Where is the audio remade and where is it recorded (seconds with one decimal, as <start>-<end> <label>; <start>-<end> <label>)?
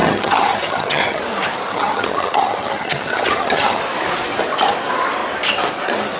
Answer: 0.0-1.2 remade; 1.2-1.7 recorded; 1.7-3.8 remade; 3.8-6.2 recorded